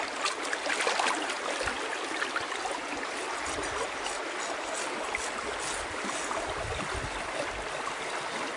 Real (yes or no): yes